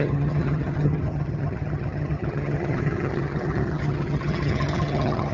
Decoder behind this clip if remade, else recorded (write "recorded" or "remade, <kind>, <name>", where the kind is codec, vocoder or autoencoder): remade, vocoder, HiFi-GAN